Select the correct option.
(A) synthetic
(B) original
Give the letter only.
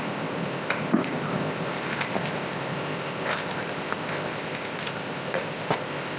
A